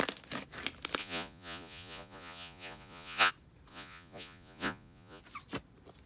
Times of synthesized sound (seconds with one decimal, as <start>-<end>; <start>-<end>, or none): 1.0-3.3; 3.7-5.2